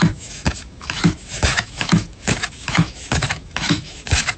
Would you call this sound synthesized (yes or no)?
yes